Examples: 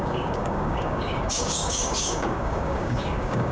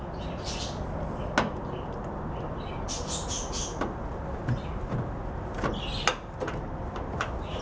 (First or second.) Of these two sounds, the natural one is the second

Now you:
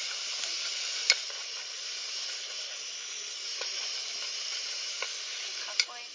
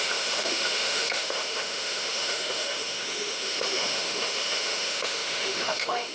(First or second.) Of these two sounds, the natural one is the first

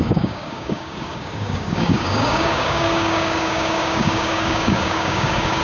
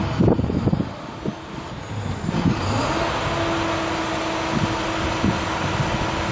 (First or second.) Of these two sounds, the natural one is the second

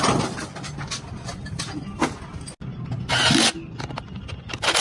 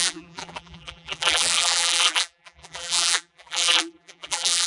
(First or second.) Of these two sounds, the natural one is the first